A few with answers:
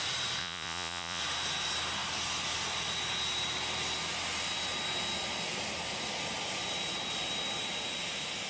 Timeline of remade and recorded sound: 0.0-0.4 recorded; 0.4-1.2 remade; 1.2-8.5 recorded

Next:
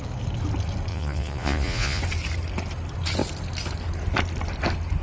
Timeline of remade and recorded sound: 0.0-0.9 recorded; 0.9-2.0 remade; 2.0-5.0 recorded

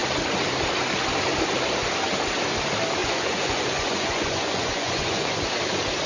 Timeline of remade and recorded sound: 0.0-3.0 recorded; 3.0-5.4 remade; 5.4-6.1 recorded